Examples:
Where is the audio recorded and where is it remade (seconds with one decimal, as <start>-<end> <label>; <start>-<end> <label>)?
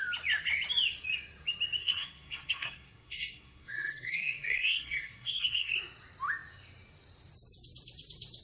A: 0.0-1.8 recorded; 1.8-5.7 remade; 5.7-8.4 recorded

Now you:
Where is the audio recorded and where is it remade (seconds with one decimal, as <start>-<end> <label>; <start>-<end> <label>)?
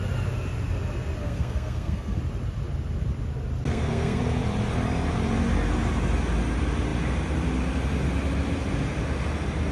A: 0.0-1.2 recorded; 1.2-2.2 remade; 2.2-3.7 recorded; 3.7-4.2 remade; 4.2-9.7 recorded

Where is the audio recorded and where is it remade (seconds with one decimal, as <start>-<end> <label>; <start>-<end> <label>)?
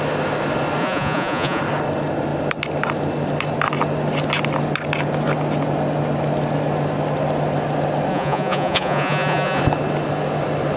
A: 0.0-0.8 recorded; 0.8-1.6 remade; 1.6-8.1 recorded; 8.1-9.6 remade; 9.6-10.8 recorded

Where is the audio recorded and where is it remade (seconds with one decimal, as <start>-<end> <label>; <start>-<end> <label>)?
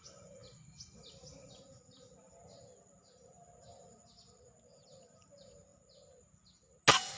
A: 0.0-7.2 recorded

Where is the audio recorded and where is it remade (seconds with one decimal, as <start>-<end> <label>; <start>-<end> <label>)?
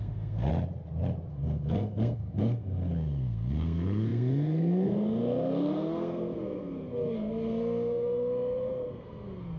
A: 0.0-0.5 remade; 0.5-1.3 recorded; 1.3-9.6 remade